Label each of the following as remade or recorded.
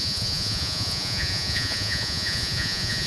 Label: remade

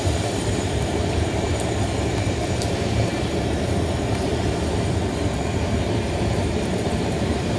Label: remade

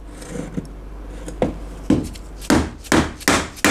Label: recorded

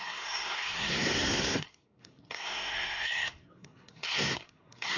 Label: remade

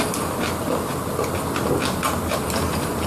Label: recorded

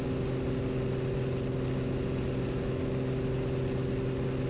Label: recorded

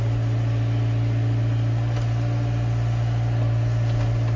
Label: recorded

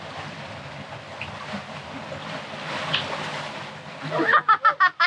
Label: recorded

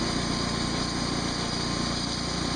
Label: recorded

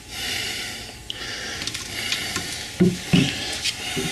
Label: recorded